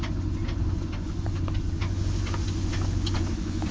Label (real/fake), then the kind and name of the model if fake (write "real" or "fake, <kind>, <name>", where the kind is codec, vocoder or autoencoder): fake, vocoder, Vocos